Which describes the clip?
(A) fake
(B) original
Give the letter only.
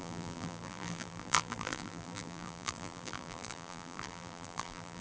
A